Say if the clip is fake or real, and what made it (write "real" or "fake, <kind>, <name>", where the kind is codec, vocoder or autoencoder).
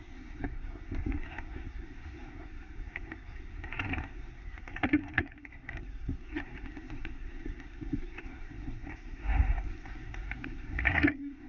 fake, codec, SNAC